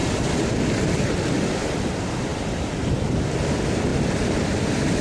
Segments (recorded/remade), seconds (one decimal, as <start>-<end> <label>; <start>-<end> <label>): 0.0-5.0 recorded